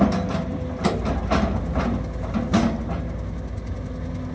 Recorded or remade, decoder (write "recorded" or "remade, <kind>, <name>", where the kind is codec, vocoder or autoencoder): recorded